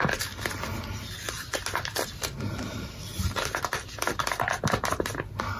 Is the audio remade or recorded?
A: recorded